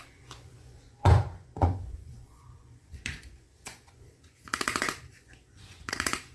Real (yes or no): no